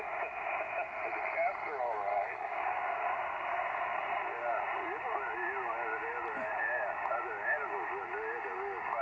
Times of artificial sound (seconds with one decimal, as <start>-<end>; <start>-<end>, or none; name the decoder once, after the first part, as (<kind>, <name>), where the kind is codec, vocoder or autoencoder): 2.1-3.1 (codec, DAC)